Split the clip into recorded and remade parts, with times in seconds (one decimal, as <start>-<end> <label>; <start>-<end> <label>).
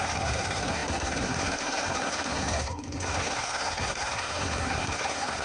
0.0-5.4 remade